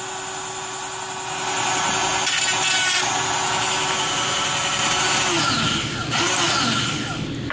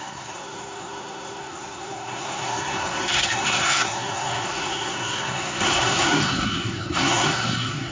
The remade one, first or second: second